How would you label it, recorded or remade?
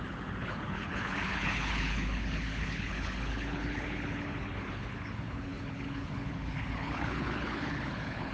remade